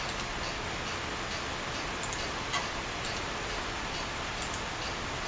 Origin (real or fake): real